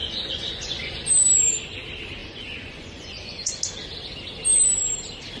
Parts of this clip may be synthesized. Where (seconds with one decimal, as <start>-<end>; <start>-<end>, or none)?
0.0-1.1; 2.2-3.6

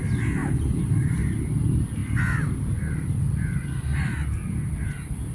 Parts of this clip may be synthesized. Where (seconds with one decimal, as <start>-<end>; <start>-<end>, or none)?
0.4-1.2; 2.0-5.3

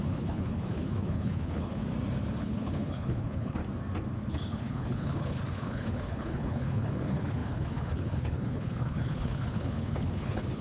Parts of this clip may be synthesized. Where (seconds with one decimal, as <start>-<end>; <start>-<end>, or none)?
0.0-1.8; 2.4-3.6; 4.3-10.6

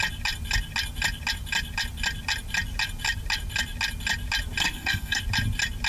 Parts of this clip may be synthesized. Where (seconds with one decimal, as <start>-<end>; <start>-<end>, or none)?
4.6-5.2

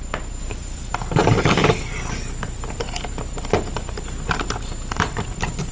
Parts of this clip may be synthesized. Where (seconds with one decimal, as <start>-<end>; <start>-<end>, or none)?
0.0-5.7

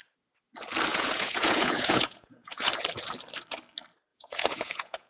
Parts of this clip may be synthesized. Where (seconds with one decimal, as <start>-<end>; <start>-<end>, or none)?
0.9-2.7; 4.1-5.1

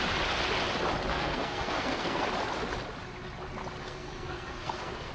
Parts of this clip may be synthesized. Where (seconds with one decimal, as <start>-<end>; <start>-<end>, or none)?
1.1-2.2; 3.8-5.1